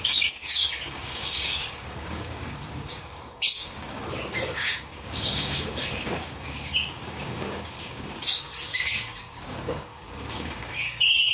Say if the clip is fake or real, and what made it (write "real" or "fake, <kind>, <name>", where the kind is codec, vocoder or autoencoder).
fake, codec, DAC